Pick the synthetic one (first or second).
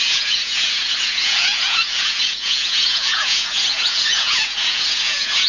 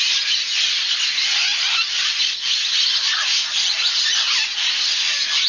first